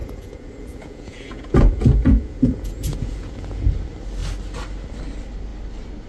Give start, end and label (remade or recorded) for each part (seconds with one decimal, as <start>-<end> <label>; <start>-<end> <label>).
0.0-3.7 remade; 3.7-6.1 recorded